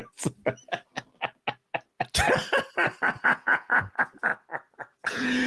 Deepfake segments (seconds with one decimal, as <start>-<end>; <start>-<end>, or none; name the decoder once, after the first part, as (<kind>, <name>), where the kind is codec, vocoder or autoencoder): 3.2-4.3 (vocoder, Vocos); 5.1-5.5